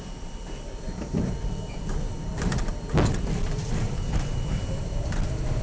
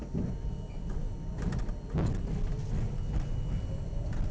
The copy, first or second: first